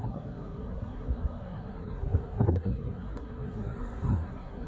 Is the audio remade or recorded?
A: remade